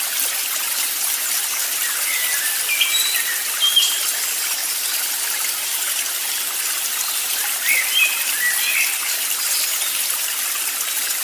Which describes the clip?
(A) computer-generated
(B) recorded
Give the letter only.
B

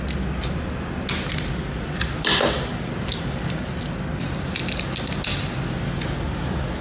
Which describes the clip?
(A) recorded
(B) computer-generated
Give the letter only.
A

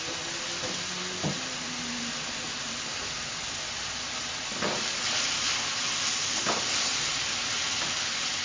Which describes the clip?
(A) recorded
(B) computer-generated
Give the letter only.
B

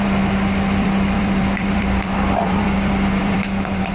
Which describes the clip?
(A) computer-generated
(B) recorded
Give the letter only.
A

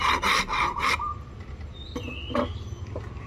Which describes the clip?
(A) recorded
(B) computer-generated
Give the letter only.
A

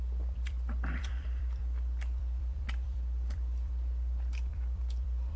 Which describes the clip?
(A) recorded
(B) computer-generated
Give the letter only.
B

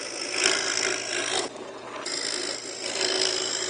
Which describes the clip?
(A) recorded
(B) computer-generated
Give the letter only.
A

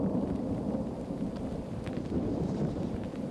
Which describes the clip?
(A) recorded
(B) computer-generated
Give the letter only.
A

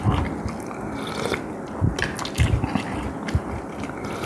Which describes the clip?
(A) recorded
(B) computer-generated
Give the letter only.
A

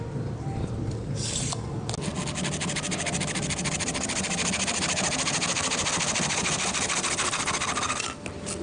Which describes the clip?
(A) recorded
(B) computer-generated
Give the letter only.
A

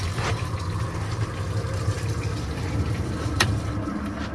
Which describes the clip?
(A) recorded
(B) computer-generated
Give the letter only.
B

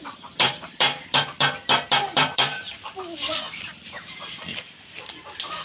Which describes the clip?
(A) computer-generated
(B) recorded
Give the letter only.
A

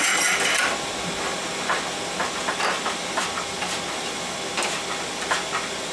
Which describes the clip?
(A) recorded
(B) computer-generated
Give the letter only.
A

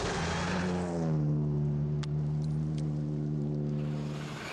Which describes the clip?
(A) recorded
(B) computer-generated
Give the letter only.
A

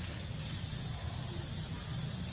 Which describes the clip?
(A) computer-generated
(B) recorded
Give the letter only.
B